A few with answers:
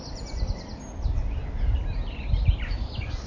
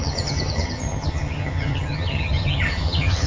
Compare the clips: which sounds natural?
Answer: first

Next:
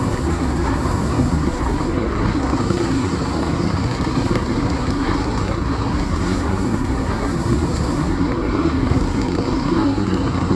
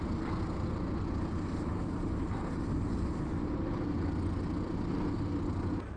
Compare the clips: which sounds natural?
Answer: second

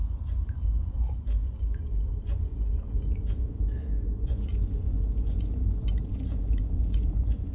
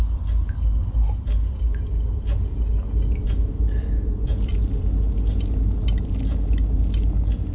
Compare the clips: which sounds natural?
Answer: second